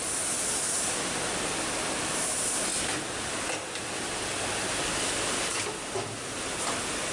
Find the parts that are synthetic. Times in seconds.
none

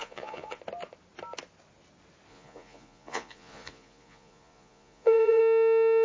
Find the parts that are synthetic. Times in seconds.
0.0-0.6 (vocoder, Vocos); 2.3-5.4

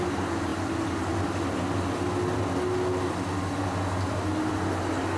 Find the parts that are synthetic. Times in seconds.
none

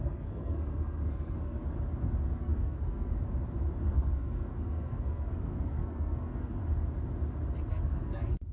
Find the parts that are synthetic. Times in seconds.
0.0-1.6 (codec, SNAC); 2.4-3.2; 3.8-6.6; 7.7-8.5

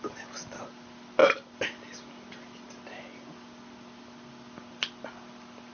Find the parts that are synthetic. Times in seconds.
none